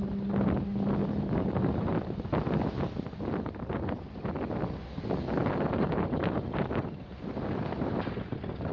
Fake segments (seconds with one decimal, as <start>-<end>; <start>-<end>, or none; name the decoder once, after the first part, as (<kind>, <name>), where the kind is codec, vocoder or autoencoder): 1.0-2.4 (vocoder, BigVGAN v2); 5.4-8.7